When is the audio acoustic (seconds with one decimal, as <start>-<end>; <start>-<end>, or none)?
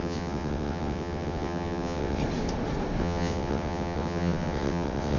2.2-3.0